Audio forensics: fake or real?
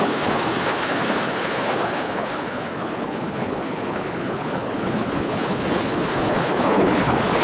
fake